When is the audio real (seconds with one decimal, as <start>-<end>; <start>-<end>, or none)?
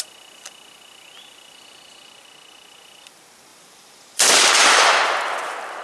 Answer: 0.0-3.5; 5.2-5.8